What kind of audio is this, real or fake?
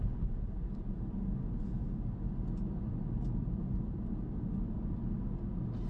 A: real